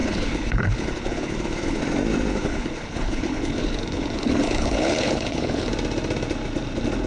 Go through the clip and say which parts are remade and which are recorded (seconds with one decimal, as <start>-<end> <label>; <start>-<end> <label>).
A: 0.0-1.8 remade; 1.8-2.3 recorded; 2.3-5.7 remade; 5.7-7.1 recorded